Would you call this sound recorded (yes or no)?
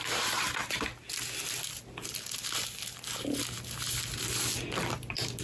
yes